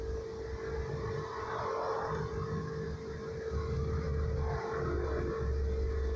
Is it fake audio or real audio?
real